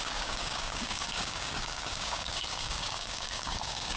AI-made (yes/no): yes